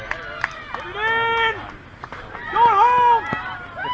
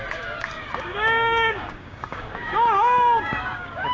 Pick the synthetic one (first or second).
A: second